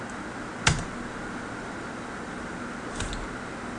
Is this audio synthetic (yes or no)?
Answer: no